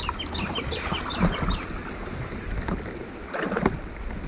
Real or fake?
real